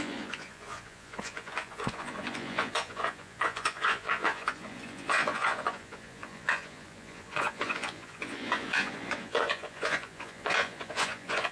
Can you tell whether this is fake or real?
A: fake